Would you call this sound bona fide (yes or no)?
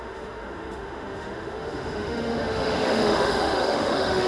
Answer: no